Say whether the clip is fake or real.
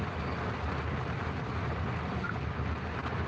real